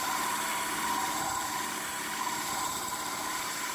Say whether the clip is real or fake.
fake